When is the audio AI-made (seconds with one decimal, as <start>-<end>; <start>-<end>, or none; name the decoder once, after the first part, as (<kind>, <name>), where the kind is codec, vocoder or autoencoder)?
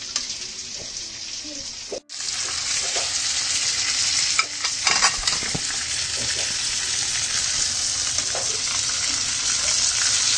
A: 0.6-1.2 (vocoder, BigVGAN v2); 4.6-7.7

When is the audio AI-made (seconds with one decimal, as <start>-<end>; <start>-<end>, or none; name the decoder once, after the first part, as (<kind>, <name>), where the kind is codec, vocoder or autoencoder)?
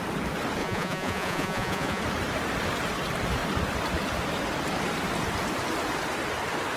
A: 0.6-2.0 (vocoder, Vocos)